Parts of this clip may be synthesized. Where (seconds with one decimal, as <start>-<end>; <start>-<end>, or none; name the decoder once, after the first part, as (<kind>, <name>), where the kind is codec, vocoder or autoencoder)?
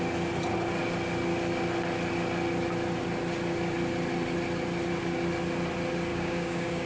6.1-6.9 (codec, DAC)